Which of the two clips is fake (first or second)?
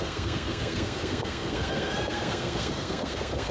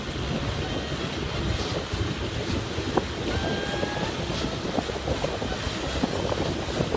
first